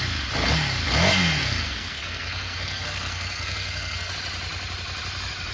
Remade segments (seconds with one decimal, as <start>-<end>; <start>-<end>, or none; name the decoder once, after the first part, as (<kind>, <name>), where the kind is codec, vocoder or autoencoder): 1.4-4.1 (codec, SNAC)